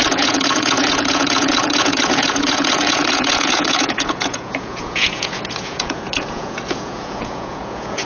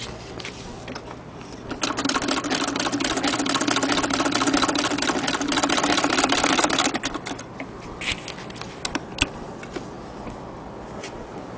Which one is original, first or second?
second